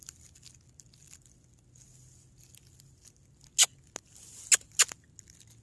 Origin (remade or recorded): recorded